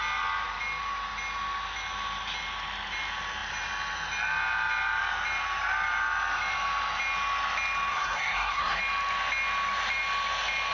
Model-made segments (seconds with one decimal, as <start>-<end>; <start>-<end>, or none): 7.9-8.8